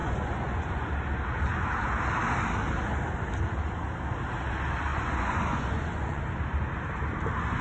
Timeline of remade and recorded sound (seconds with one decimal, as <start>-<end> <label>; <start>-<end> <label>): 0.0-0.9 remade; 0.9-4.9 recorded; 4.9-6.2 remade; 6.2-7.6 recorded